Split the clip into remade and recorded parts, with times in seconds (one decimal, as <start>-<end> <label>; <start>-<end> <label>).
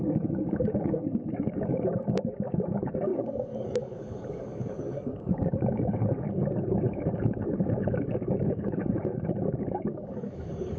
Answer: 0.0-10.8 remade